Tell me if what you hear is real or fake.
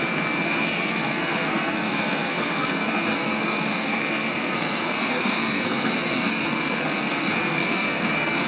fake